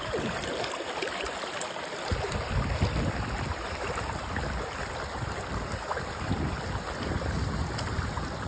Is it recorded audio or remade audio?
remade